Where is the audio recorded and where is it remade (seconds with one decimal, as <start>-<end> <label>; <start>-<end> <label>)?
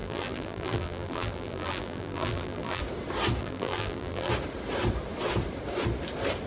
0.0-2.8 remade; 2.8-3.4 recorded; 3.4-4.3 remade; 4.3-6.5 recorded